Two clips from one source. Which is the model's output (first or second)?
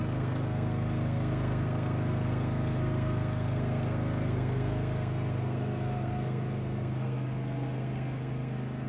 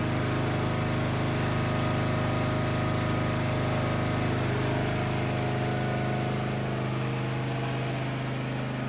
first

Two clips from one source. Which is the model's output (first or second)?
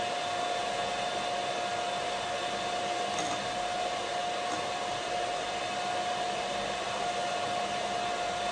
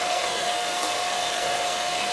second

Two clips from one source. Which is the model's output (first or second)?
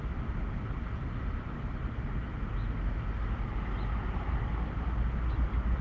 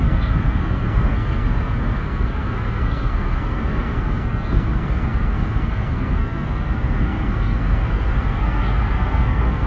second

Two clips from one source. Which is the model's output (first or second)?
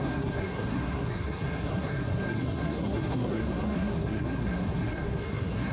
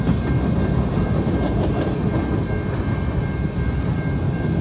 first